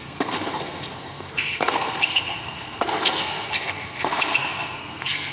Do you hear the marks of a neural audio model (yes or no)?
yes